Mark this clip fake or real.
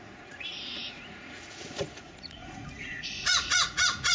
fake